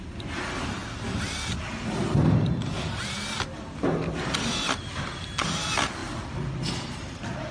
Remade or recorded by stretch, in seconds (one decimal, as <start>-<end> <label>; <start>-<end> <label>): 0.0-6.0 recorded; 6.0-6.5 remade; 6.5-7.5 recorded